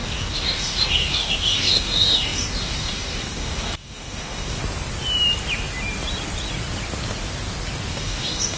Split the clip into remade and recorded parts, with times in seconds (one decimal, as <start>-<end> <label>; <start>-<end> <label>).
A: 0.0-4.6 remade; 4.6-7.9 recorded; 7.9-8.6 remade